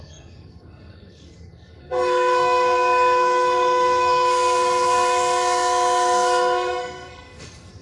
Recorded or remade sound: remade